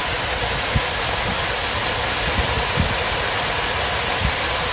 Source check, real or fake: real